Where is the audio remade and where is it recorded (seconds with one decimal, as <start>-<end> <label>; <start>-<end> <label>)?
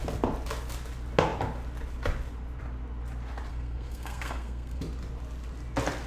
0.0-3.5 recorded; 3.5-4.8 remade; 4.8-6.1 recorded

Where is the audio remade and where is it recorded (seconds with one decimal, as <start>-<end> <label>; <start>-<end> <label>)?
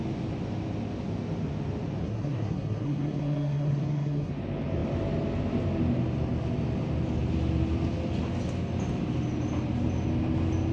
0.0-2.0 recorded; 2.0-4.3 remade; 4.3-10.7 recorded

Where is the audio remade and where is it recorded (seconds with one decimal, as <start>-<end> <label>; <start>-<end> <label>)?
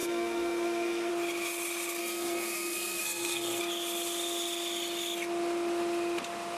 0.0-1.1 remade; 1.1-2.0 recorded; 2.0-3.6 remade; 3.6-6.6 recorded